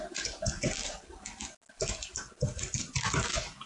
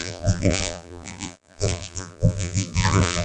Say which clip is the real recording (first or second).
first